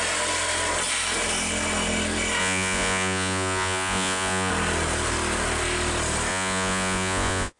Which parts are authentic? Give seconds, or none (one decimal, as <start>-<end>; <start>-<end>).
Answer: 0.0-2.4; 4.5-6.3